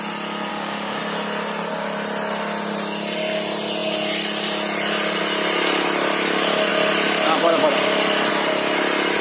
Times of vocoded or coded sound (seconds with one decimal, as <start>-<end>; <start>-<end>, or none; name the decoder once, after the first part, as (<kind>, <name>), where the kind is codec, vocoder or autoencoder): 0.5-1.0 (codec, DAC)